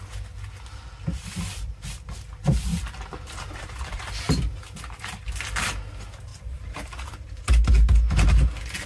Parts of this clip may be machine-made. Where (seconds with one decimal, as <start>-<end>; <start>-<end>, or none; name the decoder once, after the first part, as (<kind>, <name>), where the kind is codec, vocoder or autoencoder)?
2.7-4.0 (vocoder, BigVGAN v2); 6.3-7.4